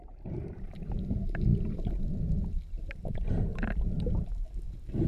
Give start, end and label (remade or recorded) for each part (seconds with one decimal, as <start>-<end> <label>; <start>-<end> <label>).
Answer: 0.0-0.4 recorded; 0.4-0.9 remade; 0.9-5.1 recorded